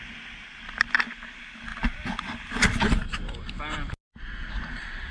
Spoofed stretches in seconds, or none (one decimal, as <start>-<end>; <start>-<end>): none